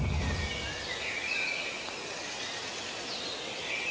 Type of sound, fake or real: real